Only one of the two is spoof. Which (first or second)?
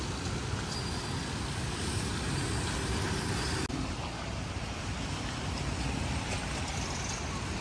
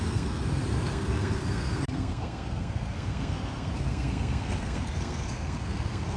second